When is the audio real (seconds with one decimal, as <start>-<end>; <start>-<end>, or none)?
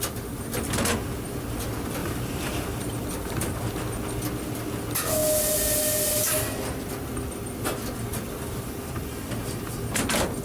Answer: 0.0-2.0; 2.9-8.1; 8.9-10.4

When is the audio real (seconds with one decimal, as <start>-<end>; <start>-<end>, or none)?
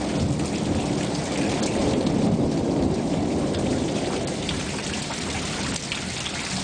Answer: 0.0-1.8; 5.8-6.6